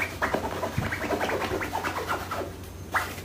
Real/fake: fake